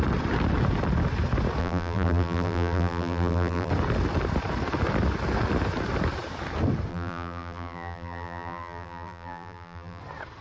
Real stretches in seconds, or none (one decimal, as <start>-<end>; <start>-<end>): 0.0-1.6; 3.7-6.9; 10.0-10.4